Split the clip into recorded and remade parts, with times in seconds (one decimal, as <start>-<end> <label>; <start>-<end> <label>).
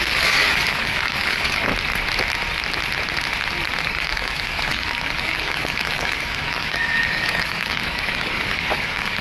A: 0.0-1.7 remade; 1.7-3.8 recorded; 3.8-9.2 remade